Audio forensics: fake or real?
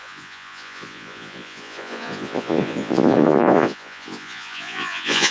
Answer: fake